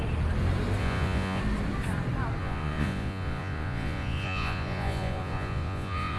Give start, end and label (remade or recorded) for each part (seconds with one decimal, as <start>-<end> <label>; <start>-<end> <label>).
0.0-0.8 recorded; 0.8-1.4 remade; 1.4-2.4 recorded; 2.4-6.2 remade